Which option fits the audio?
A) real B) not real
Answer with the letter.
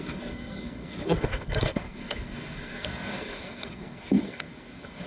B